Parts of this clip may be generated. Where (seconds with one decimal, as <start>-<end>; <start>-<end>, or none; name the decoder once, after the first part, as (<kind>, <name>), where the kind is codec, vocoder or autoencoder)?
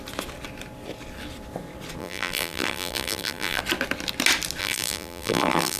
2.0-3.6 (vocoder, BigVGAN v2); 4.6-5.8